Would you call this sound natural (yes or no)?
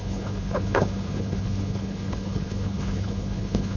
no